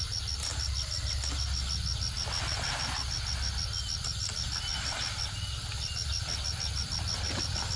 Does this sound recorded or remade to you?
recorded